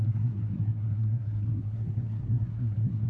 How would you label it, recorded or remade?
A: remade